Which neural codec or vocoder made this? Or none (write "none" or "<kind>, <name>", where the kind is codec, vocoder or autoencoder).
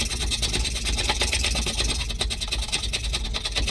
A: none